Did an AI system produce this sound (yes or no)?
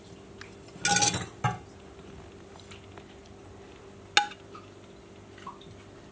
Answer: no